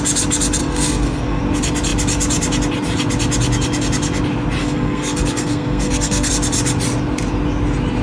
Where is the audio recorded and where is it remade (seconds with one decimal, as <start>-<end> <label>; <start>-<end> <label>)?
0.0-0.6 recorded; 0.6-1.4 remade; 1.4-4.6 recorded; 4.6-6.3 remade; 6.3-8.0 recorded